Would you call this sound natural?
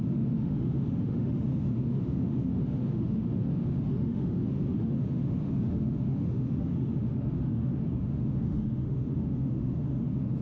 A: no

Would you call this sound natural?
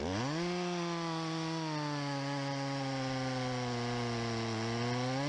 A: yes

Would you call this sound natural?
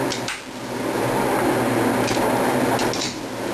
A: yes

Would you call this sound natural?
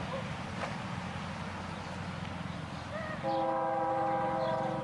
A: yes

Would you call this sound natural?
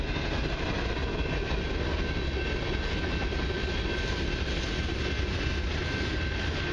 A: yes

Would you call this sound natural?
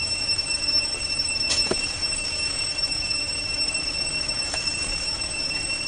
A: no